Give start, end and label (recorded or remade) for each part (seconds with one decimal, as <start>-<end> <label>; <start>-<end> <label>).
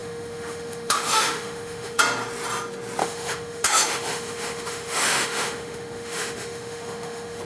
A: 0.0-2.0 remade; 2.0-3.0 recorded; 3.0-7.4 remade